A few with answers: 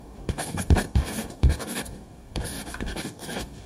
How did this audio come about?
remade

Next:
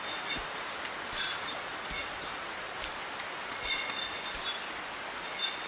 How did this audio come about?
recorded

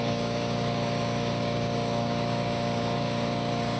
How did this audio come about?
remade